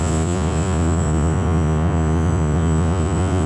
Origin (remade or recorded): remade